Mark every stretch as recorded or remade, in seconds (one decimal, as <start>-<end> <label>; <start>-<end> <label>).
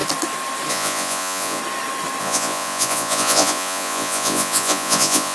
0.0-0.7 recorded; 0.7-1.6 remade; 1.6-2.2 recorded; 2.2-5.3 remade